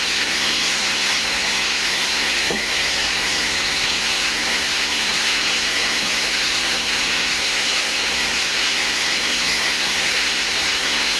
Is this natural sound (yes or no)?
no